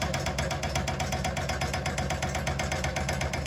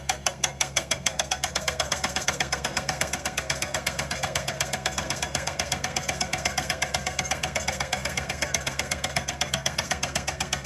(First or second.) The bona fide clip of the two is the first